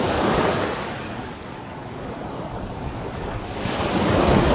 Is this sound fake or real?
fake